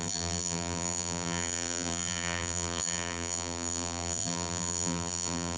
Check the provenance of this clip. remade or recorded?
remade